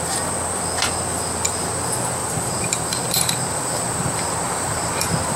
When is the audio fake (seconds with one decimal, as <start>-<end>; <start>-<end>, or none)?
2.2-4.9